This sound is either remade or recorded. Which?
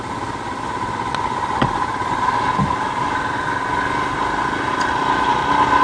recorded